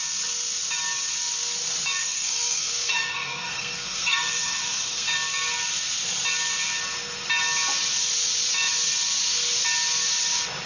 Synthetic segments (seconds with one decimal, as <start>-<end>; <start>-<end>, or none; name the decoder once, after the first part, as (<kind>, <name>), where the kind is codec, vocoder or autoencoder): 2.0-5.1 (codec, SNAC)